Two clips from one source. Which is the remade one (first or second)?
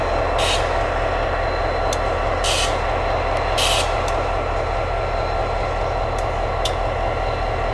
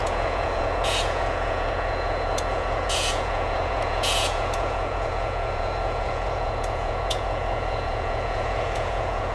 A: second